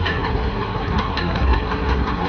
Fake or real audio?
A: fake